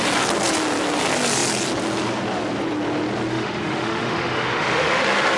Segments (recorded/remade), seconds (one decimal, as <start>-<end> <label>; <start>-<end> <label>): 0.0-3.3 recorded; 3.3-5.0 remade; 5.0-5.4 recorded